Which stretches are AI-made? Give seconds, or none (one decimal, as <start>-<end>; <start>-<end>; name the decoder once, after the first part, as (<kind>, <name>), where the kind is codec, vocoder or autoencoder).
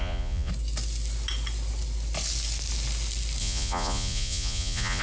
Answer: 0.0-0.5 (vocoder, Vocos); 3.4-5.0